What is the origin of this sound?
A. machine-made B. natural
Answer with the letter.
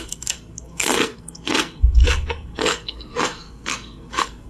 A